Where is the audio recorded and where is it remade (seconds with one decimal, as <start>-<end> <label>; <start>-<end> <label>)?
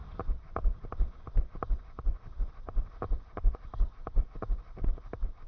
0.0-5.5 recorded